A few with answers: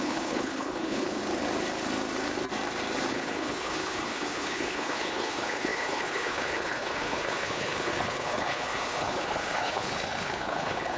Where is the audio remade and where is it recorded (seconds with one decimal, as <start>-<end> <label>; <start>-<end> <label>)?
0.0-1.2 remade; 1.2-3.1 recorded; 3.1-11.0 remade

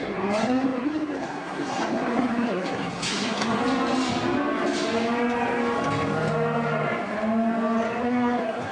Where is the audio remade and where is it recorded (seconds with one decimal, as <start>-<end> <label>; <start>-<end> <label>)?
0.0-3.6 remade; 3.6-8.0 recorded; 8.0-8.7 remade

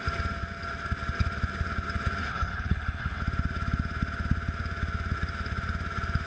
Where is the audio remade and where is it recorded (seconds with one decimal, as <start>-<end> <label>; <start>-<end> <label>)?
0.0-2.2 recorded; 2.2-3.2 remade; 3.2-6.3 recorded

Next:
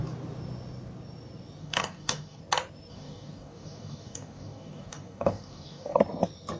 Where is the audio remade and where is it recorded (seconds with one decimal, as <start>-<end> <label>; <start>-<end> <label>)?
0.0-1.6 recorded; 1.6-2.4 remade; 2.4-2.9 recorded; 2.9-6.0 remade; 6.0-6.6 recorded

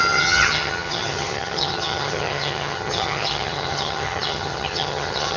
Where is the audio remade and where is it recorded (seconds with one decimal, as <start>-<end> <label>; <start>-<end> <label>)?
0.0-5.4 remade

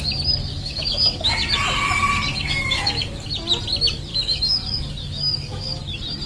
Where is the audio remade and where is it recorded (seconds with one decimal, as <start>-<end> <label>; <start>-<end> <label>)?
0.0-0.5 recorded; 0.5-1.4 remade; 1.4-2.3 recorded; 2.3-3.3 remade; 3.3-4.1 recorded; 4.1-5.8 remade; 5.8-6.3 recorded

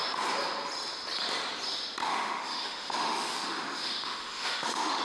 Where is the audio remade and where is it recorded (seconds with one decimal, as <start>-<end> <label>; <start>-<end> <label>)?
0.0-2.0 recorded; 2.0-5.0 remade

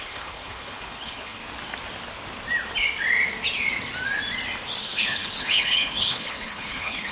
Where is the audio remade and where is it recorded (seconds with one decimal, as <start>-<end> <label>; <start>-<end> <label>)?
0.0-1.4 remade; 1.4-4.8 recorded; 4.8-7.1 remade